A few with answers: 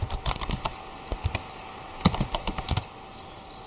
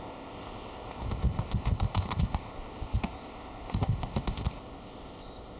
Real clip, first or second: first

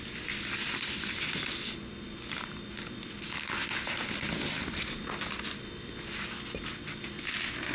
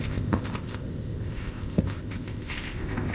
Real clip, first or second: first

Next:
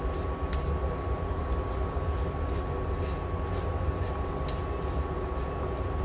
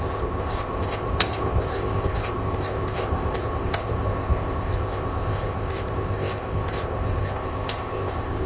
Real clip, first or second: first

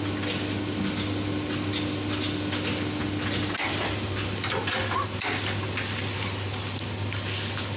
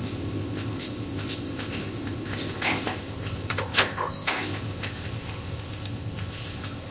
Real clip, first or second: first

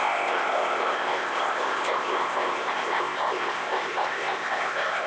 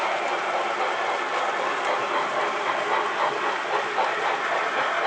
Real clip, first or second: second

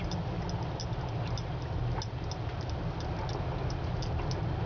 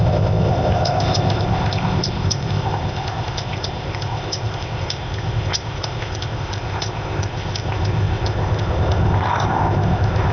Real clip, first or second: first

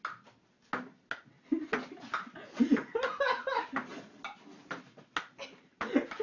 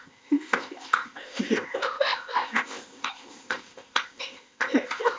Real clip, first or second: first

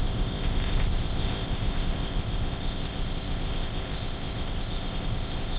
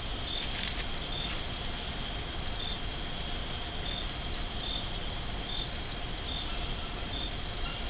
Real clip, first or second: second